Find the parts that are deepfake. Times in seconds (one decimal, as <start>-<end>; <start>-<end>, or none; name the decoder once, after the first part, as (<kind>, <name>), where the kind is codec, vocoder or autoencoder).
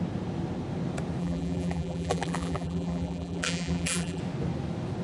1.2-4.2 (vocoder, BigVGAN v2)